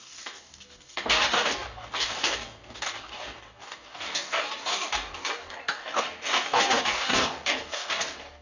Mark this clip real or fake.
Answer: fake